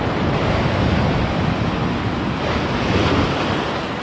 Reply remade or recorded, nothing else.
recorded